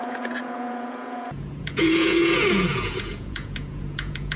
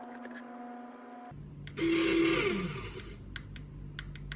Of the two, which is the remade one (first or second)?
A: first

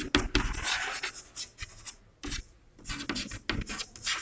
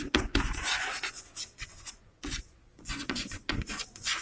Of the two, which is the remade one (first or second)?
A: second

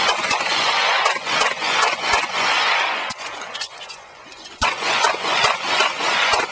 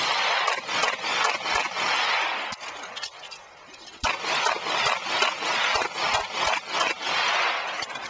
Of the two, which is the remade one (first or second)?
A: first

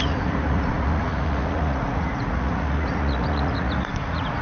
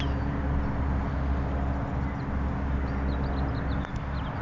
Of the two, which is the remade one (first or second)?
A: first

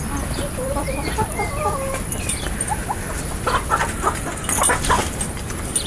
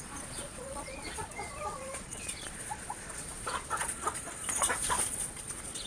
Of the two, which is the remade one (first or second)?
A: second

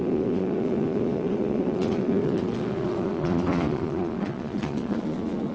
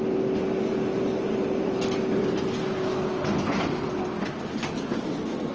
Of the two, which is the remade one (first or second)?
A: first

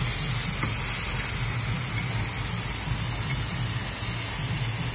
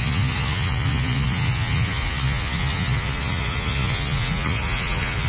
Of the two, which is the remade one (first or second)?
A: second